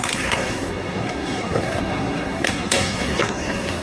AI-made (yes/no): yes